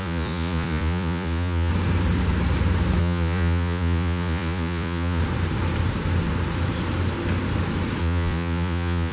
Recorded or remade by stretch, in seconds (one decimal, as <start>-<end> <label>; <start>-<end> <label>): 0.0-1.7 remade; 1.7-3.0 recorded; 3.0-5.2 remade; 5.2-8.0 recorded; 8.0-9.1 remade